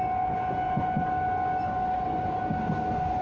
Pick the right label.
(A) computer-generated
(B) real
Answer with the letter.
B